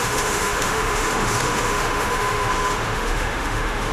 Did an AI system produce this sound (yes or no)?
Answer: yes